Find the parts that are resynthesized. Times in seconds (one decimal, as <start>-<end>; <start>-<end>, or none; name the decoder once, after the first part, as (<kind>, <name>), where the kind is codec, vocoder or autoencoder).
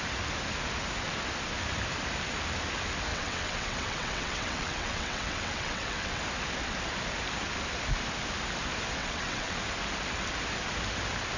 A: 3.1-6.2 (vocoder, WaveNeXt); 9.0-9.6